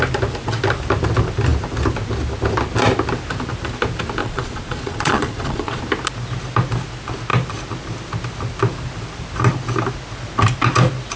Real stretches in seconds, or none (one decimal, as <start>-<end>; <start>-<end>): 0.0-4.2; 5.8-11.2